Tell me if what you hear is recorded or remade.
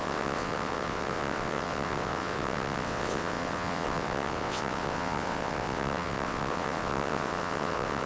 remade